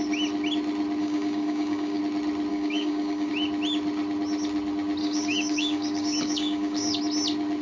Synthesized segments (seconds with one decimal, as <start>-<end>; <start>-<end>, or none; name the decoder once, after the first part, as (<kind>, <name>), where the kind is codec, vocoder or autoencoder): 1.0-2.0 (codec, DAC); 2.5-3.3; 5.0-7.0